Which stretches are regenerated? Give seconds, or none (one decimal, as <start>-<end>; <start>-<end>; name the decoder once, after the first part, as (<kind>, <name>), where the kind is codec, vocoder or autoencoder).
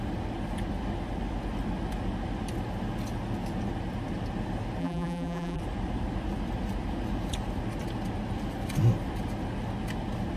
4.8-5.6 (vocoder, BigVGAN v2)